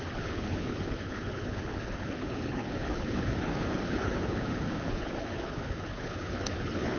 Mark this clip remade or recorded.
remade